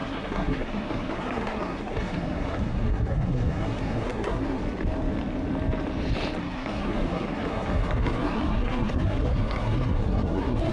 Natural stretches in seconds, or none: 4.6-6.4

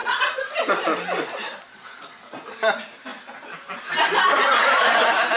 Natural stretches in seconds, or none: 0.0-3.1

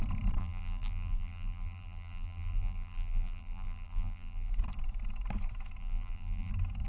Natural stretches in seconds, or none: 0.0-0.4; 4.5-5.8; 6.5-6.9